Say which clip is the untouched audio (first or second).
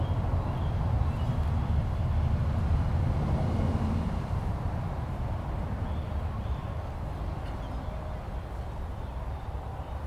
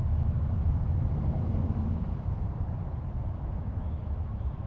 first